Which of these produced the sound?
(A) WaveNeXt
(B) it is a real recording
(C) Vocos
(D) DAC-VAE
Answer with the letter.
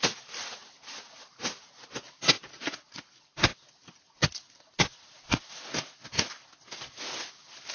B